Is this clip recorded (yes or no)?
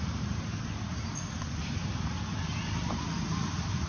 yes